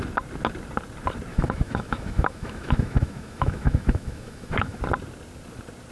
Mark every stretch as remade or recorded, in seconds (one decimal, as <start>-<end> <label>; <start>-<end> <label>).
0.0-1.3 recorded; 1.3-4.8 remade; 4.8-5.9 recorded